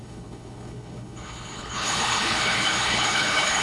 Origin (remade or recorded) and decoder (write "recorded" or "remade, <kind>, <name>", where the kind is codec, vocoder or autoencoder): remade, codec, HILCodec